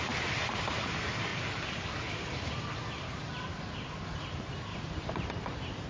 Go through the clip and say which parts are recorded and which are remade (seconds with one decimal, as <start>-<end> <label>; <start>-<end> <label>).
0.0-1.3 remade; 1.3-2.0 recorded; 2.0-5.9 remade